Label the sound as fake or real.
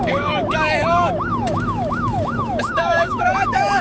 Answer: fake